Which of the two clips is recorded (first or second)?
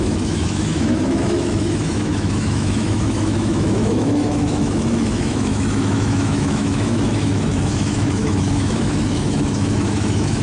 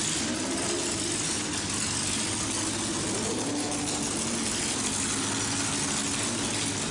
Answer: second